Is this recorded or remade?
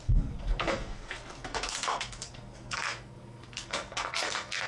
remade